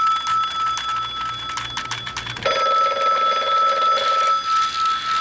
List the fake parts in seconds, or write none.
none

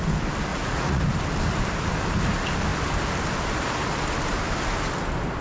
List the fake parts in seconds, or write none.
0.5-1.0 (vocoder, Vocos)

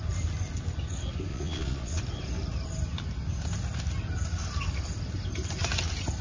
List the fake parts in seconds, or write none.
1.3-2.0 (vocoder, Vocos)

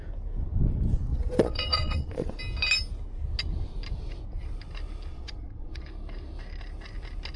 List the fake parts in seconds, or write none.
1.1-2.4 (vocoder, Vocos); 5.1-5.8